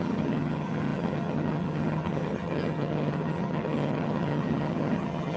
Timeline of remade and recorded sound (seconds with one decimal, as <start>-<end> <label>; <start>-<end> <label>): 0.0-5.4 remade